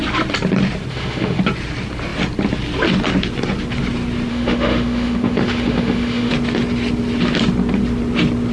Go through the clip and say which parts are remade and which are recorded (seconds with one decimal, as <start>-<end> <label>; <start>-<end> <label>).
0.0-0.9 recorded; 0.9-1.4 remade; 1.4-4.3 recorded; 4.3-6.3 remade; 6.3-8.5 recorded